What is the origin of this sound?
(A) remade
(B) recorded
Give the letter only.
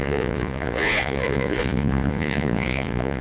A